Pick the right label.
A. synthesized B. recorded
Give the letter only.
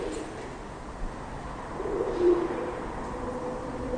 B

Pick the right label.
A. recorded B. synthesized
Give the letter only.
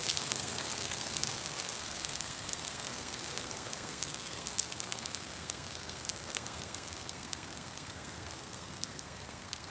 B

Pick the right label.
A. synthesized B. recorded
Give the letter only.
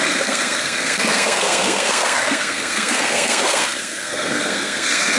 A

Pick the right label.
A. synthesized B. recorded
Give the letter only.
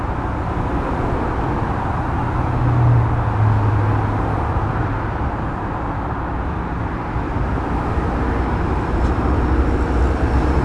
B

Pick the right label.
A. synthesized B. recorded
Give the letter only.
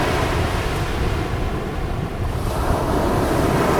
B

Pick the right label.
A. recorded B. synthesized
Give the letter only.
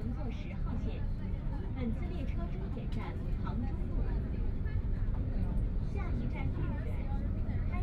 A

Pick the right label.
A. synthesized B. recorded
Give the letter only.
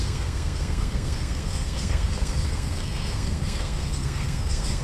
A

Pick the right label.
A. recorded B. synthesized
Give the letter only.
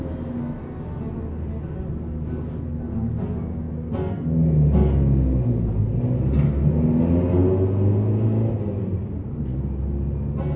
A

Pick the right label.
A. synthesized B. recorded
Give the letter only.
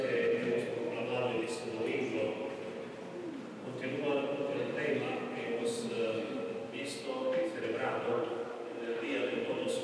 B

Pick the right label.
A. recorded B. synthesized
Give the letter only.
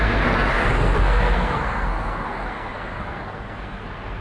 B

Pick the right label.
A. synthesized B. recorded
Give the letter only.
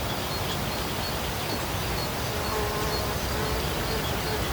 B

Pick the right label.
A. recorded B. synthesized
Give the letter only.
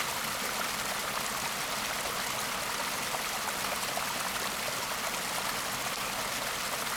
A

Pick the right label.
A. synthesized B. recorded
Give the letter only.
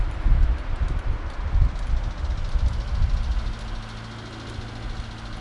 B